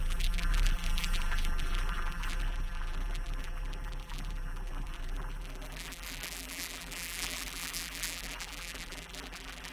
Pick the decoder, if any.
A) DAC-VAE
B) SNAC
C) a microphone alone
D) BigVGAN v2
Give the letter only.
D